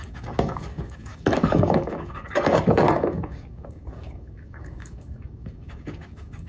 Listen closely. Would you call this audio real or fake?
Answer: fake